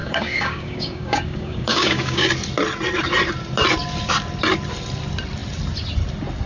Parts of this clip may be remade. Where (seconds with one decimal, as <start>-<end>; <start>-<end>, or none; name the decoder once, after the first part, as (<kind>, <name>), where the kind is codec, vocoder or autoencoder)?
0.0-2.3 (codec, DAC)

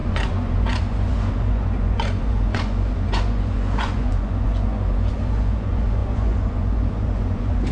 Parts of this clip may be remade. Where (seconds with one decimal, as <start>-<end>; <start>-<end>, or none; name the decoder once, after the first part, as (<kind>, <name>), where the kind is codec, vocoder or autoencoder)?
0.0-7.7 (vocoder, Vocos)

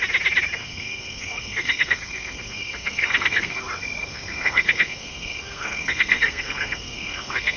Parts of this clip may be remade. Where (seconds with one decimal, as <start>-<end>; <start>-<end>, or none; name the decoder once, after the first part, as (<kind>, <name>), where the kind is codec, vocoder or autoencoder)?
0.6-3.6 (codec, SNAC); 4.0-7.6

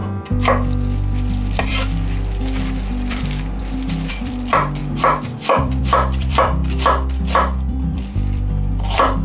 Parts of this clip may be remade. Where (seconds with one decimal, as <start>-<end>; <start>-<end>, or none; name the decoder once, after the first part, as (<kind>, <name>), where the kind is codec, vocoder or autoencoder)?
1.6-3.6 (vocoder, BigVGAN v2); 4.1-6.6; 7.7-9.2

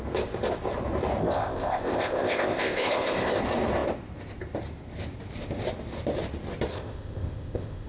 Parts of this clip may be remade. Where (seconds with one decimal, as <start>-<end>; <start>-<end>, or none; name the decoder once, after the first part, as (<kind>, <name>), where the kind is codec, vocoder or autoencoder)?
1.2-3.4 (codec, ZipCodec); 6.7-7.9

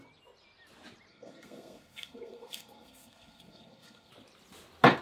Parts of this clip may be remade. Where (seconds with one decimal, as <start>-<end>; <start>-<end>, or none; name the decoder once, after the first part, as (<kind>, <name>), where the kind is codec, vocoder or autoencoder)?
1.1-4.1 (codec, SNAC)

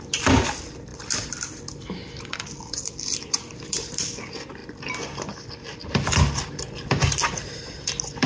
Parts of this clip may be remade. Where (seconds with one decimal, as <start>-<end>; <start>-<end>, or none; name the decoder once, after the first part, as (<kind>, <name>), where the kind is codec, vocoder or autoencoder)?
none